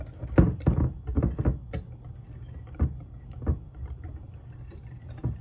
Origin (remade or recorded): recorded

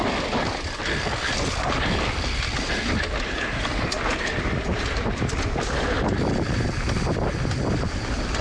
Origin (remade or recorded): recorded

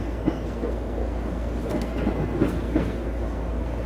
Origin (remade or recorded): remade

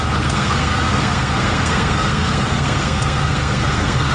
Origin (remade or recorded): remade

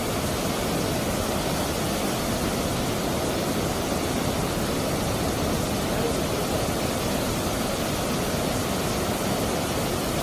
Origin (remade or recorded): recorded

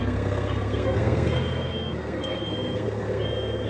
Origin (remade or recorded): remade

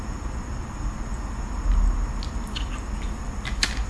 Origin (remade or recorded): recorded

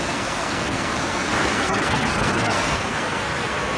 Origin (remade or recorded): remade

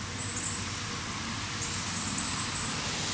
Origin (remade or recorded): recorded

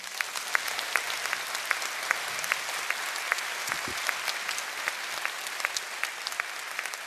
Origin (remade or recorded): recorded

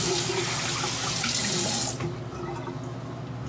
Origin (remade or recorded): recorded